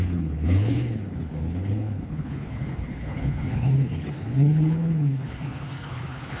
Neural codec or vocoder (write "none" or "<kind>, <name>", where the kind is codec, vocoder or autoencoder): codec, HILCodec